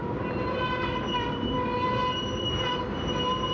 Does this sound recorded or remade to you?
recorded